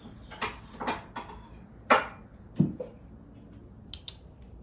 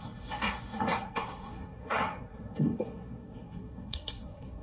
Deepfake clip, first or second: second